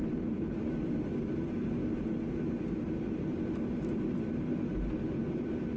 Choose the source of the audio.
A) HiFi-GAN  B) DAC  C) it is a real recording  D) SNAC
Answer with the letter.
C